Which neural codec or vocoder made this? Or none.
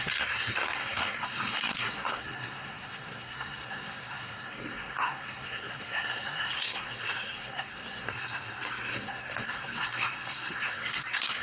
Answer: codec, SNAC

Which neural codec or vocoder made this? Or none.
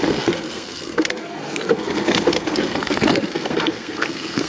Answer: codec, SNAC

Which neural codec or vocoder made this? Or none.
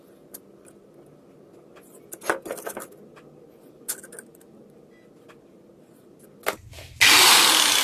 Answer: none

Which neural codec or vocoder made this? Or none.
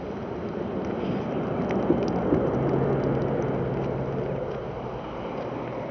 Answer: none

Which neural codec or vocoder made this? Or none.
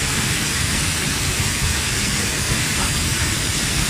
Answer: codec, SNAC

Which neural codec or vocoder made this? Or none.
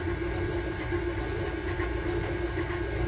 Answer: none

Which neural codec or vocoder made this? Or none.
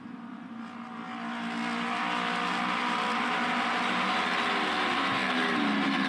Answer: none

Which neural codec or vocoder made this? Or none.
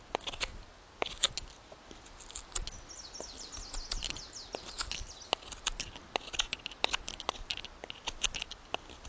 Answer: none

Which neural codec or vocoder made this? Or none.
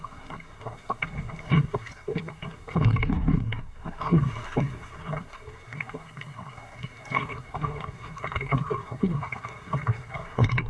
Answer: codec, SNAC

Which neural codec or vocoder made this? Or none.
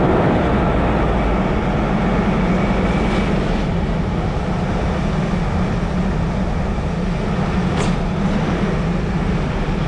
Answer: none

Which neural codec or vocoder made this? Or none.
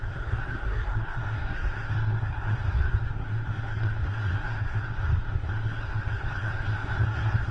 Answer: codec, SNAC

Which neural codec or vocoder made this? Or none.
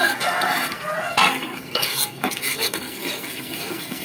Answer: codec, SNAC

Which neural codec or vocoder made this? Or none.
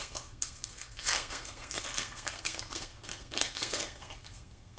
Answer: codec, SNAC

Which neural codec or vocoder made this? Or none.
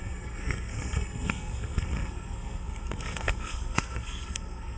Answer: codec, SNAC